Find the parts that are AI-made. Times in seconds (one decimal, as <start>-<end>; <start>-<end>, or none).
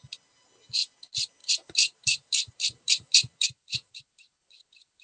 1.4-4.0